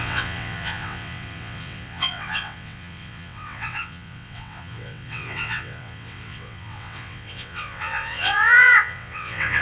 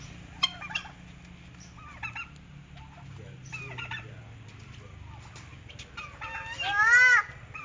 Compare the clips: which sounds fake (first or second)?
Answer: first